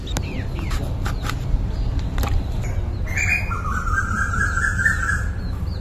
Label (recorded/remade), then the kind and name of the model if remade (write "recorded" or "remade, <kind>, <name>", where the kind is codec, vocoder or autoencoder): recorded